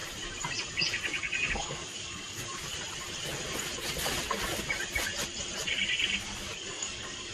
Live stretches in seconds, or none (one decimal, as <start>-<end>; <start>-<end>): 0.0-1.5; 2.7-6.2